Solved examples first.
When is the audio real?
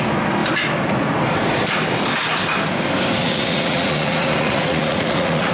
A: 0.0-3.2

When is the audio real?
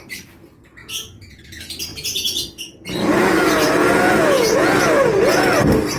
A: 0.0-0.8; 1.4-1.9; 2.6-3.8; 4.8-6.0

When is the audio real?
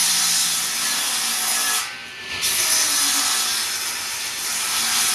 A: 0.0-5.1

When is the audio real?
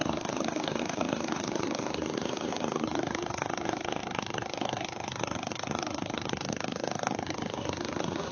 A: none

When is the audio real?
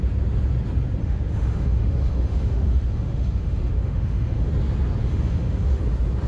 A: 0.0-1.0; 4.5-5.0; 5.8-6.3